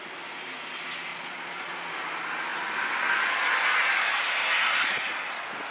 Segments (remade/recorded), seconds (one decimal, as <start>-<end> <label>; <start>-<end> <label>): 0.0-1.1 recorded; 1.1-1.9 remade; 1.9-5.7 recorded